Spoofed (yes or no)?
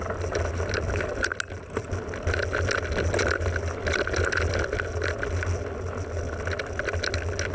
no